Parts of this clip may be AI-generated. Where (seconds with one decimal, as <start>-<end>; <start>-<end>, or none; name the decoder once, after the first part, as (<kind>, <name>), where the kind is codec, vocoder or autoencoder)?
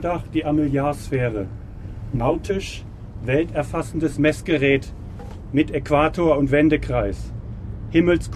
1.4-2.5 (codec, SNAC)